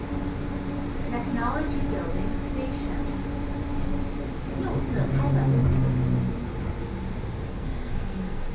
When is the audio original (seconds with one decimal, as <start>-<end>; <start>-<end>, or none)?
0.0-7.5